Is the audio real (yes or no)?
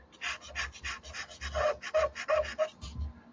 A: yes